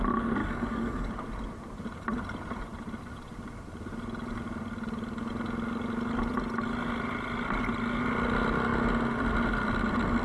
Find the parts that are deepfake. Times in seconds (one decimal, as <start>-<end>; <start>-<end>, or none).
0.4-1.1